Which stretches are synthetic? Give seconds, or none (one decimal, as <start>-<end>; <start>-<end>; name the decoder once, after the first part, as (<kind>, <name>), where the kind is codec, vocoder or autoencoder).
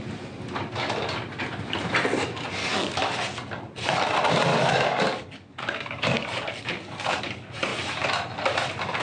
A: 2.6-3.2 (codec, DAC); 4.5-7.2